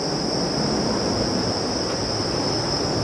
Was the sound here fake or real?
real